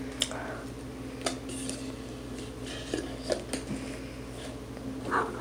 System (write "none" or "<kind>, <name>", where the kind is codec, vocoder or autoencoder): none